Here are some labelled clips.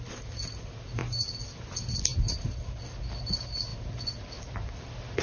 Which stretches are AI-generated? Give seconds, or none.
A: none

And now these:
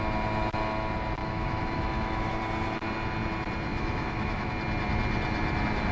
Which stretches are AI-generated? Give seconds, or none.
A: 1.2-2.3 (autoencoder, DAC-VAE); 3.7-4.5

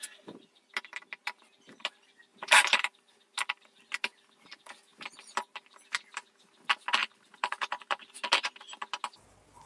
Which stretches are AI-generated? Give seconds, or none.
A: 2.3-3.2 (vocoder, BigVGAN v2); 7.0-8.0

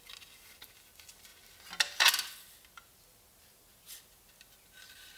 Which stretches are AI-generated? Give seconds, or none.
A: none